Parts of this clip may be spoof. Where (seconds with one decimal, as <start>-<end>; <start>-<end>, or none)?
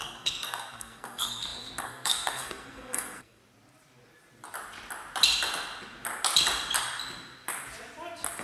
0.0-3.4